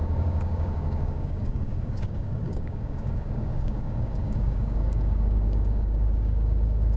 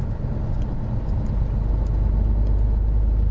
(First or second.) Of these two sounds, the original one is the second